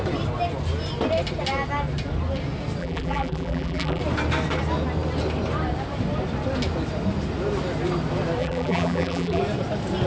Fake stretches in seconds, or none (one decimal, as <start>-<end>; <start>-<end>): 2.8-4.0; 8.4-9.4